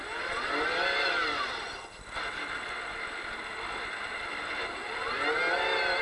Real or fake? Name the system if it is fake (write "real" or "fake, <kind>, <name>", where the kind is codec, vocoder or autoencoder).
real